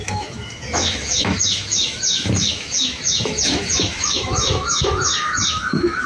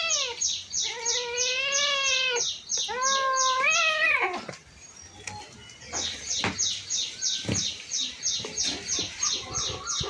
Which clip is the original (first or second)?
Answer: second